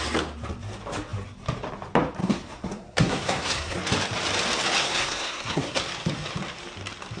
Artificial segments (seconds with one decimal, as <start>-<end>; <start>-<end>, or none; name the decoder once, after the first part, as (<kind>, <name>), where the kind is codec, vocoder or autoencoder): 2.2-3.8 (codec, SNAC); 4.8-5.8